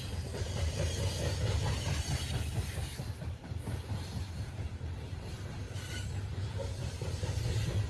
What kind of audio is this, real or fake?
fake